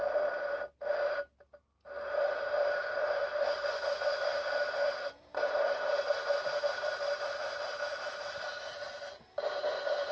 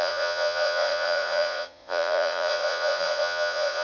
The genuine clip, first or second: first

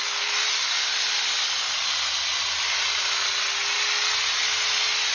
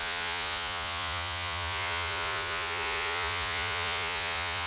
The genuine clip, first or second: first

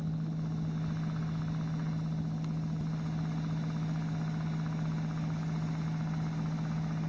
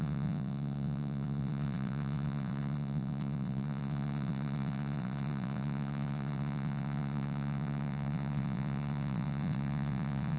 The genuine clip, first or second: first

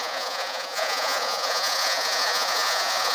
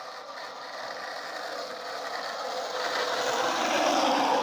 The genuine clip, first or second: second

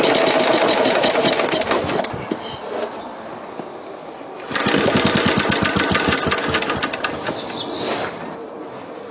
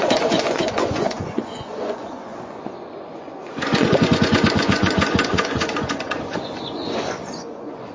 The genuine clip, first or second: first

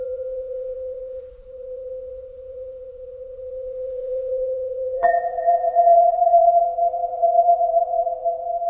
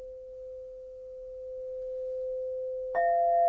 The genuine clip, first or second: second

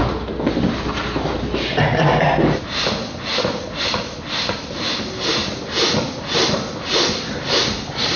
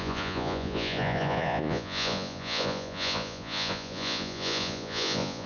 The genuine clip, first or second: first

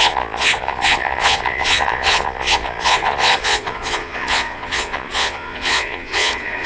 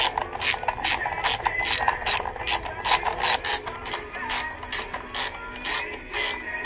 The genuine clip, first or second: second